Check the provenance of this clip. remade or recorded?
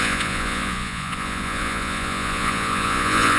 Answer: remade